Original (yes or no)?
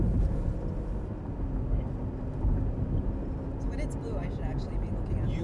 yes